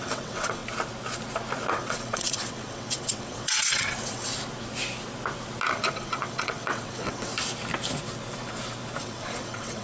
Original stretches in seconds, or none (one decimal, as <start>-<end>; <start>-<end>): 0.6-1.7; 4.3-5.7; 7.3-9.0